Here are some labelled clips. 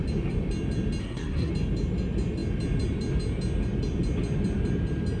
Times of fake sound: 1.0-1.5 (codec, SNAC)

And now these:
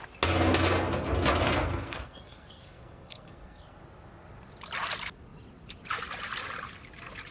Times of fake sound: 1.6-3.8 (codec, SNAC)

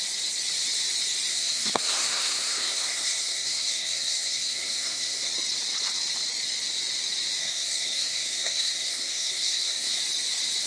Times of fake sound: 1.3-5.3 (codec, SNAC); 7.4-10.0